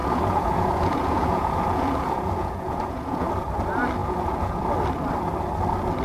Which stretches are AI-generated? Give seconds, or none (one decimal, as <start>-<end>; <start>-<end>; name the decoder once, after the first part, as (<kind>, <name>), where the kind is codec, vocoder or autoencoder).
0.0-3.3 (vocoder, Vocos); 4.0-4.6